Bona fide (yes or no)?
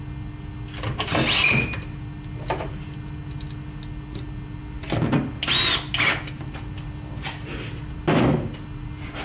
yes